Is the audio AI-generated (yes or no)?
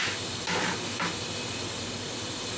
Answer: no